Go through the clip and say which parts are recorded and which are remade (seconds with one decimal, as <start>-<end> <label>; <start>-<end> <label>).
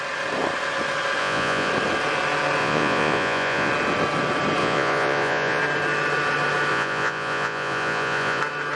0.0-1.2 recorded; 1.2-1.7 remade; 1.7-2.6 recorded; 2.6-3.7 remade; 3.7-4.6 recorded; 4.6-5.6 remade; 5.6-6.7 recorded; 6.7-8.4 remade; 8.4-8.8 recorded